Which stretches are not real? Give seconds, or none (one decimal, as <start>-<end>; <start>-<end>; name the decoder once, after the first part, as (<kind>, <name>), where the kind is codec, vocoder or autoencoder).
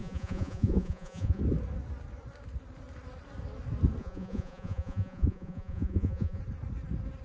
0.0-1.4 (vocoder, Vocos); 4.0-6.4